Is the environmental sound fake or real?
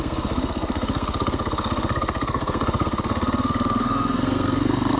fake